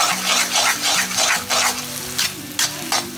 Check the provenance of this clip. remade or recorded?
recorded